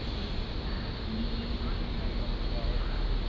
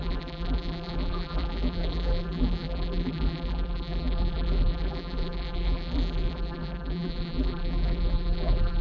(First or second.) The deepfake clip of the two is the second